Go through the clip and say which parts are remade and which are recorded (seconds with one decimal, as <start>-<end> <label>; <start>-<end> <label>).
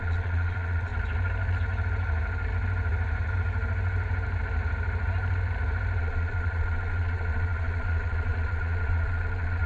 0.0-0.9 remade; 0.9-6.0 recorded; 6.0-9.7 remade